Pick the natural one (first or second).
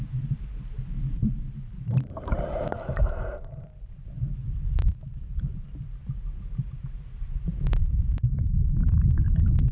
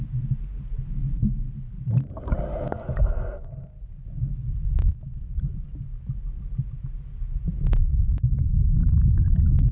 second